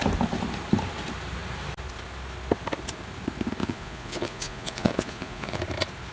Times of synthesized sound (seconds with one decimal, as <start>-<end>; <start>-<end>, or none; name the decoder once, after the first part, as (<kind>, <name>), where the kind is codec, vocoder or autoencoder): 3.6-5.6 (vocoder, Vocos)